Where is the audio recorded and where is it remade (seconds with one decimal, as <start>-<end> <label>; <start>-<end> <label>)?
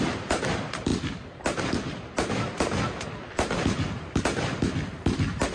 0.0-5.5 recorded